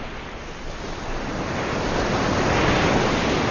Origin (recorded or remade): recorded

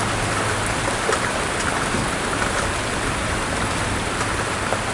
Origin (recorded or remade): recorded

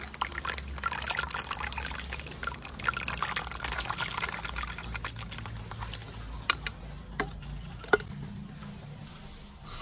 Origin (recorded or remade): recorded